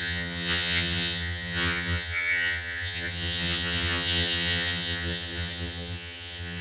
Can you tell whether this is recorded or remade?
remade